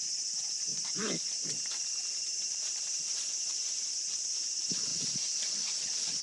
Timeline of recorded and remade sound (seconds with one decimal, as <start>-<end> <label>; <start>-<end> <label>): 0.0-0.7 recorded; 0.7-4.4 remade; 4.4-4.9 recorded; 4.9-6.2 remade